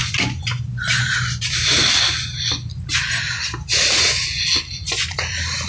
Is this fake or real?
real